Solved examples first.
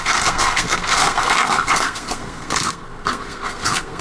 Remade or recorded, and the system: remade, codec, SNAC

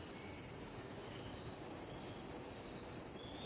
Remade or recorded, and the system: recorded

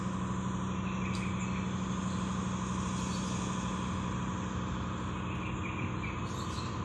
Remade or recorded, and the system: recorded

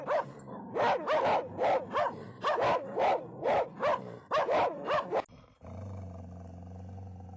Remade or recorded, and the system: recorded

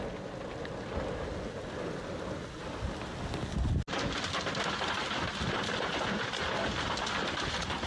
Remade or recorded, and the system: recorded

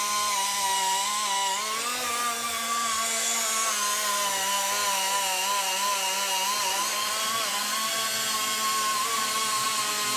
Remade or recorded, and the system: recorded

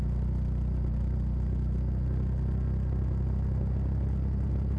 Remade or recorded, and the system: recorded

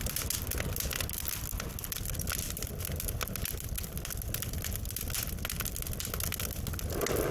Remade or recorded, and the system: recorded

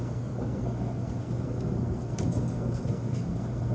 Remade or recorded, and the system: remade, codec, SNAC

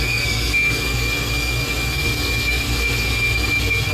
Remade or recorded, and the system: remade, codec, SNAC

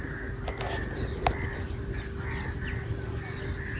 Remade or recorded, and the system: recorded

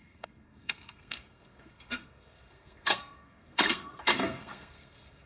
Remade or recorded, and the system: remade, codec, SNAC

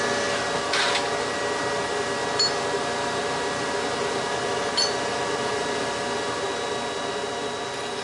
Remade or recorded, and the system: recorded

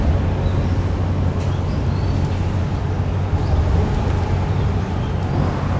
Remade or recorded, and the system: recorded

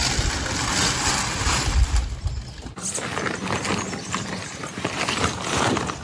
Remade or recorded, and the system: recorded